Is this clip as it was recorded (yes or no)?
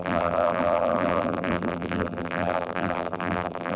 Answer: no